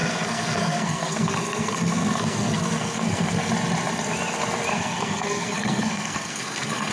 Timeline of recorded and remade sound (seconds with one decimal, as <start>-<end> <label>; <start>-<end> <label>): 0.0-3.5 remade; 3.5-4.7 recorded; 4.7-6.9 remade